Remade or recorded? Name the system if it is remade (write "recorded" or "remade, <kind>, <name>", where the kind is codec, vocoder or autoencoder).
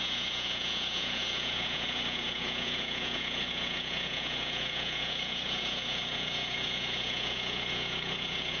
remade, vocoder, Vocos